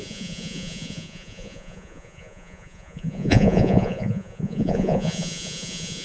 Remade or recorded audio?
remade